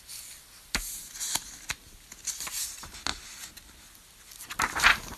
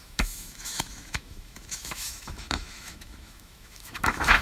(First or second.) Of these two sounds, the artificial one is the second